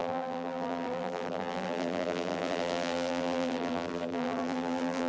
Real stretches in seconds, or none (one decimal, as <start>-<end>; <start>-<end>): none